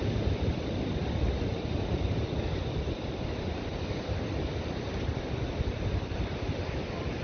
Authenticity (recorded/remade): recorded